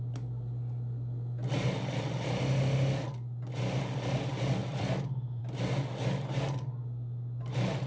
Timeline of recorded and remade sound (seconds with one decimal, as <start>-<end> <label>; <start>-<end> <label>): 0.0-4.6 recorded; 4.6-5.4 remade; 5.4-7.9 recorded